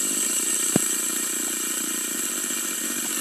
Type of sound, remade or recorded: recorded